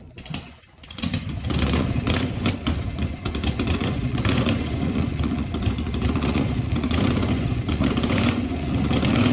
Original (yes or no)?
no